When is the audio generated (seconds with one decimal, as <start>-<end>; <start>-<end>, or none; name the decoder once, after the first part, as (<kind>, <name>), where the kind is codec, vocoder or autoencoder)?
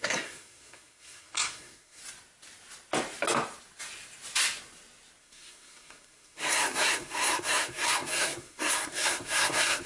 0.0-2.0 (codec, SNAC); 5.2-9.9